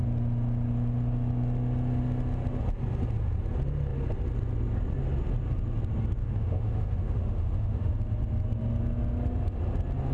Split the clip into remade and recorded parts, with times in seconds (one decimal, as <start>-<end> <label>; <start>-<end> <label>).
0.0-6.2 recorded; 6.2-7.9 remade; 7.9-10.1 recorded